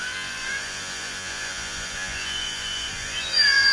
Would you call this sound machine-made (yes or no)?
yes